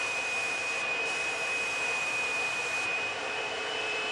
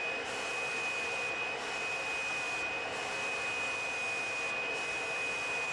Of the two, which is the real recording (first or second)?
second